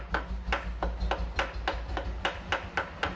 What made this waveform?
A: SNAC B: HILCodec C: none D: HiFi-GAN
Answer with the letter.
C